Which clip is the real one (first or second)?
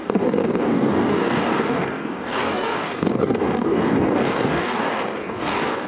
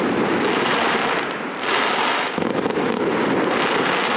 second